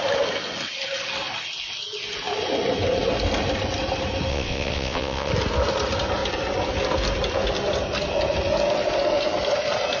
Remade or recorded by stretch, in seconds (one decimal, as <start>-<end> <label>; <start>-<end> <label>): 0.0-4.3 recorded; 4.3-5.3 remade; 5.3-10.0 recorded